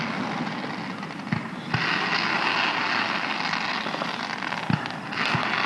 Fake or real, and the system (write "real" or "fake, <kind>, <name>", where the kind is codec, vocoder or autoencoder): real